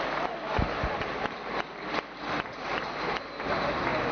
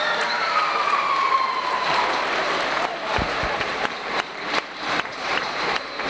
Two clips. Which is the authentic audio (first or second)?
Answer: first